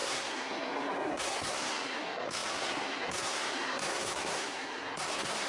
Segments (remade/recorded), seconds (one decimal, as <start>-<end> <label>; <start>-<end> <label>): 0.0-5.5 remade

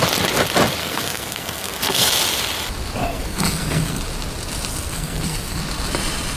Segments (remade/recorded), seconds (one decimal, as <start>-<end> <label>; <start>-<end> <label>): 0.0-0.8 recorded; 0.8-2.1 remade; 2.1-3.0 recorded; 3.0-4.0 remade; 4.0-4.7 recorded; 4.7-5.6 remade; 5.6-6.4 recorded

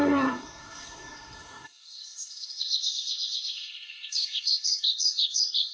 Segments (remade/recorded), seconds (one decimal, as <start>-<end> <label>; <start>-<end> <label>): 0.0-5.7 remade